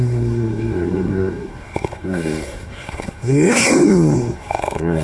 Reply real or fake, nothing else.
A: fake